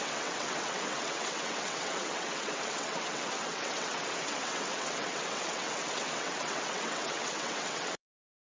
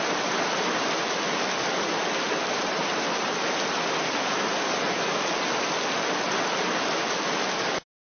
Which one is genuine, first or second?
second